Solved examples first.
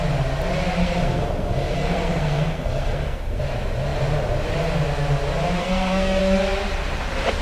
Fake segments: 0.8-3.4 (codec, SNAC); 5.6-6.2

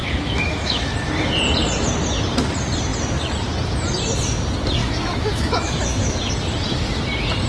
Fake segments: 0.0-0.9 (autoencoder, DAC-VAE); 4.8-6.3

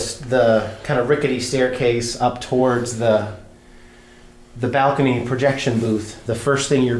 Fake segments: 2.6-3.7 (vocoder, BigVGAN v2); 5.2-6.2

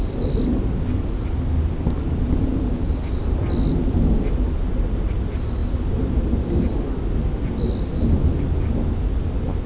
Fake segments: none

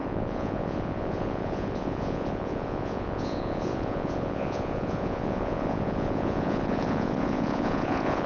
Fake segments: 0.0-8.3 (vocoder, Vocos)

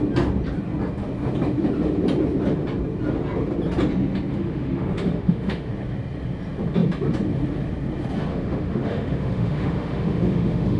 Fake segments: 4.3-5.7 (autoencoder, DAC-VAE); 8.3-10.8